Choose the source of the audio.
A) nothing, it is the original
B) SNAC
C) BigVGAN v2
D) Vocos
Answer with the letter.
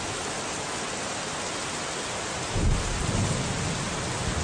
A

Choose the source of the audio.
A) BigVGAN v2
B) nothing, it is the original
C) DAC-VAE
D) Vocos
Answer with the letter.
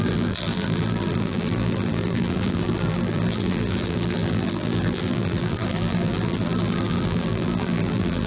A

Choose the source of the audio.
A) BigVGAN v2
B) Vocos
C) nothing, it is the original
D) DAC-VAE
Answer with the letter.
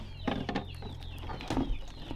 C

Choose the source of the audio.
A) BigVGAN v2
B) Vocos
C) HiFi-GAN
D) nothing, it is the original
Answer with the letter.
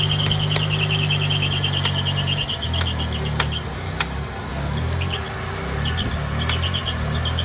D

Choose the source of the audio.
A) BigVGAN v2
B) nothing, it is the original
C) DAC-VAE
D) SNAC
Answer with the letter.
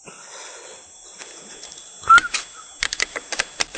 B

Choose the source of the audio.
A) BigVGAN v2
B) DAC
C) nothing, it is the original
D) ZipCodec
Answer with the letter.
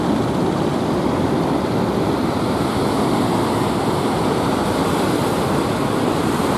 C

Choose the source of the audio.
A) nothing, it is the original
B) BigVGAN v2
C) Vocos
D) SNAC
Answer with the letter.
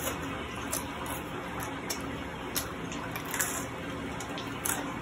A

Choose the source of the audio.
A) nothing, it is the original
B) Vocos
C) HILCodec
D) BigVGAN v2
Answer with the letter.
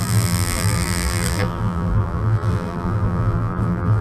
D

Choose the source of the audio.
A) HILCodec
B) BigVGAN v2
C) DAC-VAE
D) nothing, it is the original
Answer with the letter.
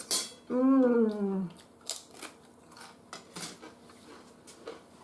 D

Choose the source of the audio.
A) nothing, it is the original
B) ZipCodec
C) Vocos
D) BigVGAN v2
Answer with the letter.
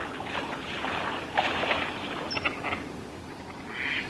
A